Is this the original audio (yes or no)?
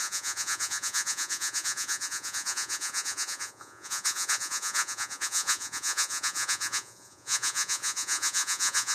no